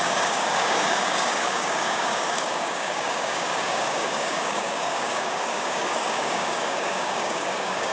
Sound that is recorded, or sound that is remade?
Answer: remade